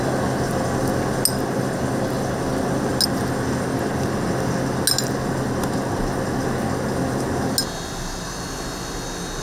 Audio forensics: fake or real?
real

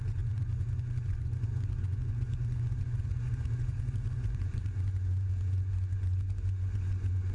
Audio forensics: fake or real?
fake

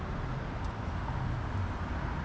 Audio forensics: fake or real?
real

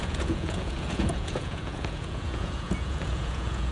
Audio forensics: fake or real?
fake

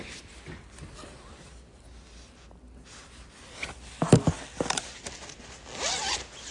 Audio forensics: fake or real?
real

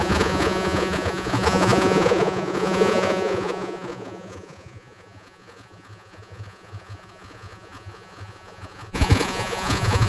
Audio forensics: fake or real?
fake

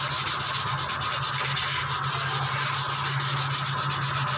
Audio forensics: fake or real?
real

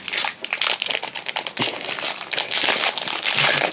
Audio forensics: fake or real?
real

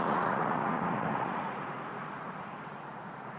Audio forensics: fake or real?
fake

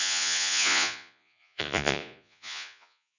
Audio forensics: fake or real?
fake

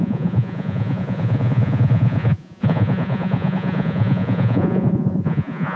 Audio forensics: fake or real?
fake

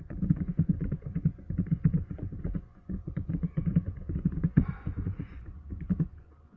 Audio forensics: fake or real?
fake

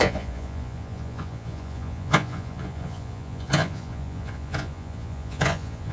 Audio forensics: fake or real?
fake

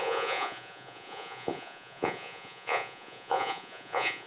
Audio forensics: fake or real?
fake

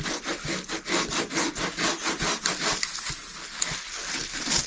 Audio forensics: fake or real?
real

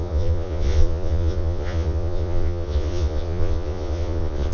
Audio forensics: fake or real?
fake